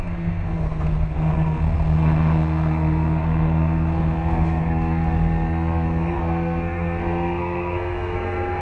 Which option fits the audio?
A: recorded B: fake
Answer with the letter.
B